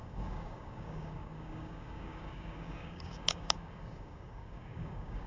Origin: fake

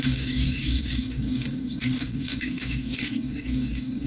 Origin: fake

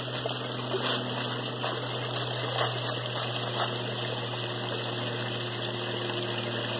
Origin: real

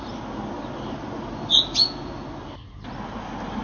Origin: real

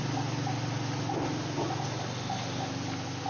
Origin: real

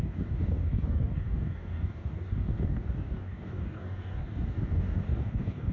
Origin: fake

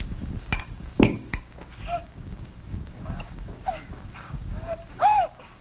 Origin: fake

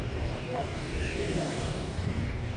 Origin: fake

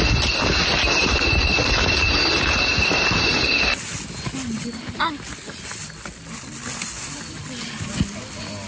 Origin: real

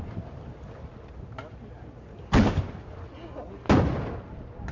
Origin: real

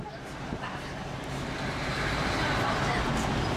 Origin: real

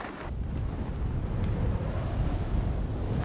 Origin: real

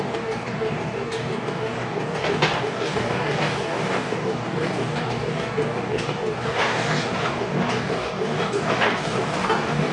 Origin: fake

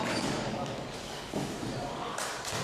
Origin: fake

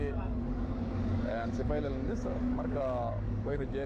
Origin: fake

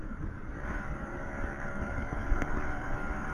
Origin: fake